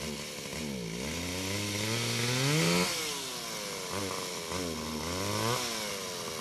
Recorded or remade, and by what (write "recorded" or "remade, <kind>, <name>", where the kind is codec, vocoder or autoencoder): recorded